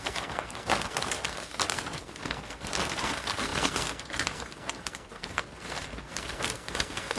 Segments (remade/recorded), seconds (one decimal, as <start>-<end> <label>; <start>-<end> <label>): 0.0-7.2 remade